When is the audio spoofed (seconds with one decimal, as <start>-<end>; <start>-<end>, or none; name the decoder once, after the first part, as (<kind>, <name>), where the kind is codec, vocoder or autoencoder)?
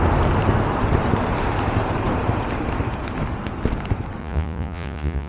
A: 4.2-5.3 (vocoder, Vocos)